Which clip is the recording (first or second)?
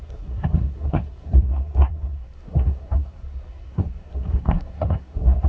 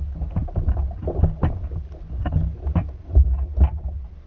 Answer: second